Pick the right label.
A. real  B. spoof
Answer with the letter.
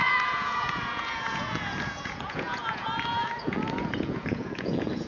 B